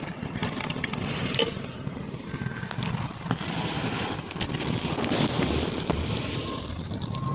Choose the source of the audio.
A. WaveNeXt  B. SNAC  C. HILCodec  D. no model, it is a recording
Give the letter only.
D